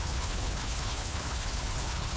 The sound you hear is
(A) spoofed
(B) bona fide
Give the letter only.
A